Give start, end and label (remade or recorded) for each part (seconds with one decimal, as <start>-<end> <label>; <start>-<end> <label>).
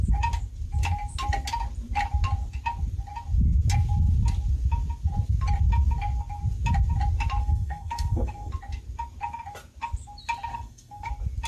0.0-7.4 recorded; 7.4-8.5 remade; 8.5-10.5 recorded; 10.5-11.1 remade; 11.1-11.5 recorded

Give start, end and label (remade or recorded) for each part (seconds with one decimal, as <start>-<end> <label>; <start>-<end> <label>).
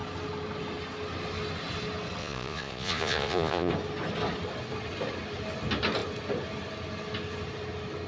0.0-2.2 recorded; 2.2-3.7 remade; 3.7-8.1 recorded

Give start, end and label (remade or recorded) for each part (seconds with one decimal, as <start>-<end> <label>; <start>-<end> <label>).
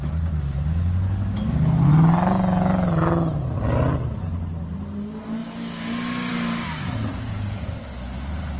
0.0-7.1 recorded; 7.1-7.7 remade; 7.7-8.6 recorded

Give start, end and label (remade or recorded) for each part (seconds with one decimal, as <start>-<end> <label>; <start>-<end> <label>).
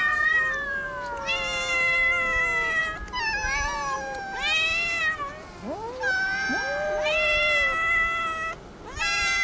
0.0-9.4 recorded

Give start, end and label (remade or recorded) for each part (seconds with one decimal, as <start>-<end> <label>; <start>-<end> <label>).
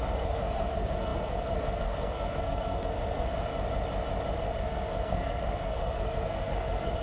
0.0-3.5 remade; 3.5-4.3 recorded; 4.3-7.0 remade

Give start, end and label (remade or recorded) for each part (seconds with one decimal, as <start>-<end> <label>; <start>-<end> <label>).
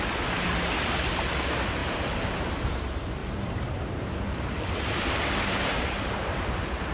0.0-1.8 recorded; 1.8-2.8 remade; 2.8-3.2 recorded; 3.2-6.9 remade